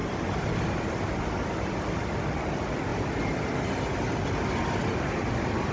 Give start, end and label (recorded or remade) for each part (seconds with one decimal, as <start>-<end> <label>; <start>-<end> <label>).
0.0-5.7 recorded